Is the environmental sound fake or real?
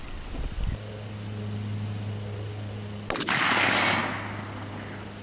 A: real